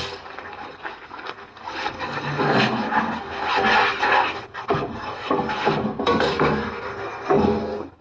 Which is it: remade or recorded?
remade